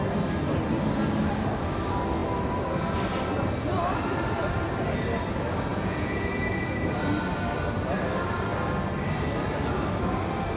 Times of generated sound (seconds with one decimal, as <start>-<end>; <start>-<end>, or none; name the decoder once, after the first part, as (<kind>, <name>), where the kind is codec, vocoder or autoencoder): 5.7-7.0 (vocoder, Vocos)